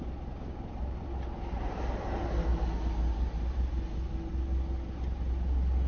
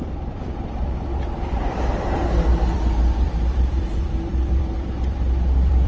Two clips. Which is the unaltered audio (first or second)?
first